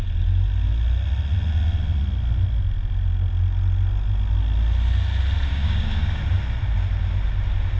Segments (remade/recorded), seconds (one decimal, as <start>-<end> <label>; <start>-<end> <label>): 0.0-5.5 recorded; 5.5-6.2 remade; 6.2-7.8 recorded